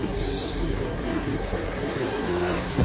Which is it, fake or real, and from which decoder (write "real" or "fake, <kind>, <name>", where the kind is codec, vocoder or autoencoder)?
fake, codec, SNAC